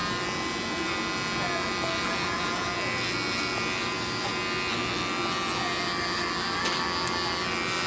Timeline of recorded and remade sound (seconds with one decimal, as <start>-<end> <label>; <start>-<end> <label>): 0.0-7.9 recorded